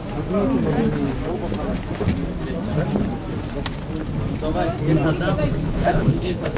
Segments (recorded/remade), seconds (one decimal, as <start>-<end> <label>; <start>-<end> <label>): 0.0-5.6 recorded; 5.6-6.6 remade